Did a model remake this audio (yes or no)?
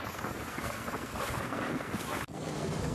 yes